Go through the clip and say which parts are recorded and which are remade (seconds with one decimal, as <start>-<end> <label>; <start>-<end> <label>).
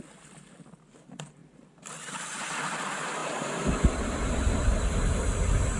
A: 0.0-5.8 recorded